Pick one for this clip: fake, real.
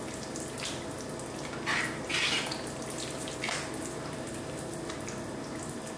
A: real